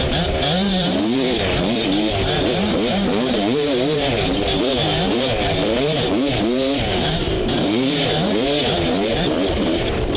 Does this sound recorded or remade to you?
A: remade